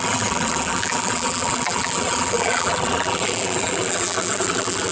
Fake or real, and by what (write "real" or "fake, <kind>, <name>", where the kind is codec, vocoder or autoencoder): fake, vocoder, BigVGAN v2